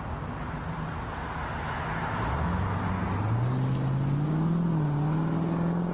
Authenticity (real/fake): real